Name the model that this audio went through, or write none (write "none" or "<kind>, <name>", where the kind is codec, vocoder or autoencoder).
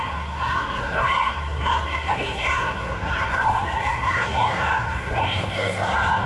codec, SNAC